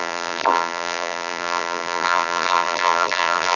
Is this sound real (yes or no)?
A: no